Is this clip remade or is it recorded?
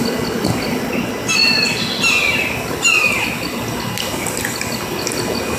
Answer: recorded